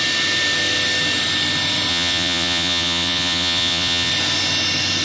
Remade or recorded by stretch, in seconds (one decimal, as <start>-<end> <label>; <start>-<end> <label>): 0.0-1.9 recorded; 1.9-4.1 remade; 4.1-5.0 recorded